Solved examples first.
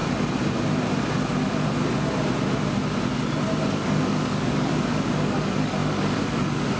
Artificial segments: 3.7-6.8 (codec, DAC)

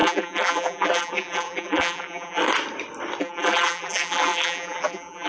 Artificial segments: 0.0-2.4 (vocoder, BigVGAN v2); 3.2-5.3

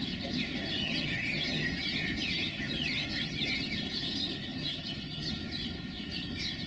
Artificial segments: 0.8-1.7 (vocoder, HiFi-GAN); 2.5-3.7; 4.5-5.3